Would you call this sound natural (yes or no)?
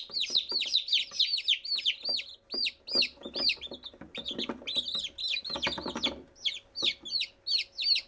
yes